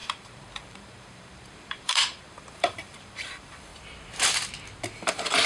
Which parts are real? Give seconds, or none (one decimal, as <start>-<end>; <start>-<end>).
3.7-5.5